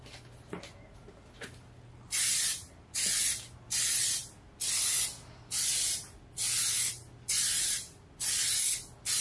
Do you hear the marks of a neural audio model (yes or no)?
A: no